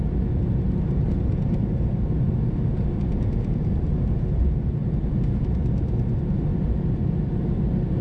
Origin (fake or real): fake